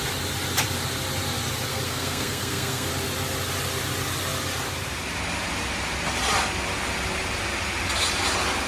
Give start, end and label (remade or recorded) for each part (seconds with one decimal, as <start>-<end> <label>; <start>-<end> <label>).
0.0-1.7 recorded; 1.7-2.9 remade; 2.9-8.7 recorded